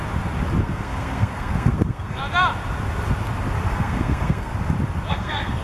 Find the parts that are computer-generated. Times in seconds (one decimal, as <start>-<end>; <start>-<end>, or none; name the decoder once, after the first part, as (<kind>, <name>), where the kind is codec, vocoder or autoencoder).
0.6-2.2 (codec, SNAC); 3.7-4.5; 5.1-5.6